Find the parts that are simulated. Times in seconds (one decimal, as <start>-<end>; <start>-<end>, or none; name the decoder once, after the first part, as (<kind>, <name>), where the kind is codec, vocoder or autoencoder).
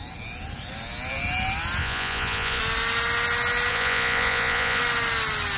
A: 1.8-2.6 (vocoder, Vocos); 3.7-4.8